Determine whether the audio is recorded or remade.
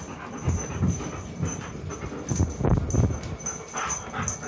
recorded